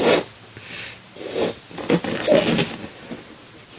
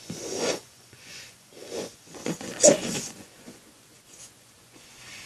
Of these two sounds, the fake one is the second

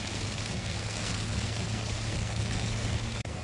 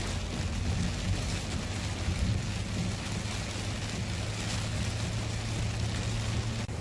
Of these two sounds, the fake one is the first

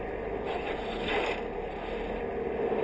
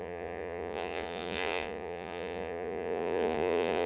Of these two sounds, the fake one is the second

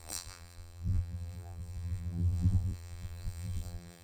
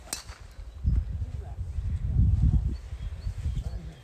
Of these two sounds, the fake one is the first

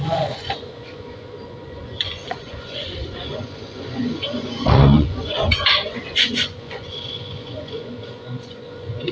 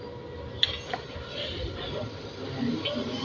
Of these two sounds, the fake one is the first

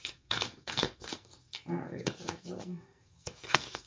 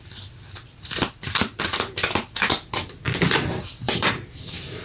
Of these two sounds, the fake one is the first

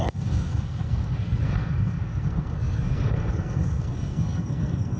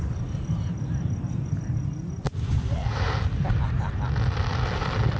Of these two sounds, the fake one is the first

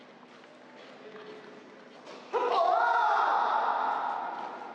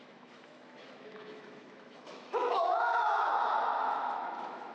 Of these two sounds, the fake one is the second